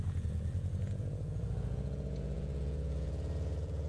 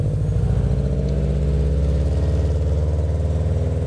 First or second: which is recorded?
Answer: second